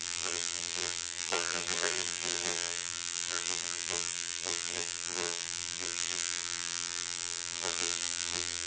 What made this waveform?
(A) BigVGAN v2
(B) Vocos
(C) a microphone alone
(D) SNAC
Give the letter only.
A